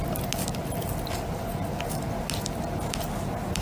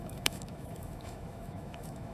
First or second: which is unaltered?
first